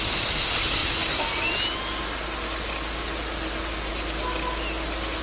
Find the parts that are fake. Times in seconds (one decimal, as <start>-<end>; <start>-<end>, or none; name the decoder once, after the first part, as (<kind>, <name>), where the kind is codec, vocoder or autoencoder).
none